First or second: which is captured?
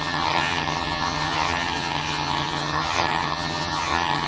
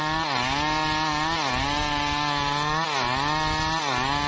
second